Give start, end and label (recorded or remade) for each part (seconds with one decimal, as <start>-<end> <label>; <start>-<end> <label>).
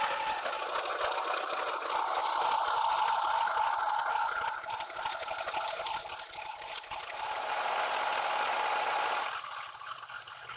0.0-10.6 recorded